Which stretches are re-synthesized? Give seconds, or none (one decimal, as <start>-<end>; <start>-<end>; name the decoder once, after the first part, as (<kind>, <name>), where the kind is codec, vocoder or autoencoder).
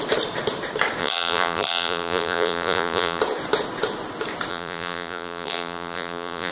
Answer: 1.0-3.2 (vocoder, BigVGAN v2); 4.5-6.5